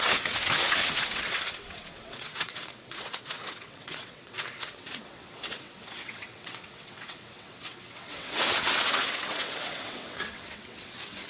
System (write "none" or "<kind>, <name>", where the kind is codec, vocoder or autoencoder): vocoder, WaveNeXt